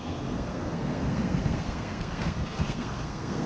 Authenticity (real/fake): fake